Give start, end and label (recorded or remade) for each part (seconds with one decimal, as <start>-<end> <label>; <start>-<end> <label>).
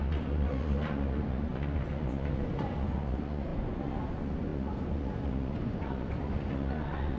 0.0-7.2 remade